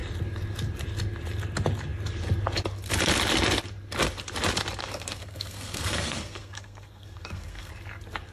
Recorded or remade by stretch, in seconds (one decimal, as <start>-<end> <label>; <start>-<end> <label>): 0.0-4.8 recorded; 4.8-7.7 remade; 7.7-8.3 recorded